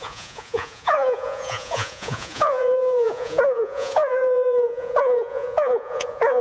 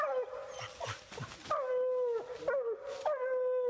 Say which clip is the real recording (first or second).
second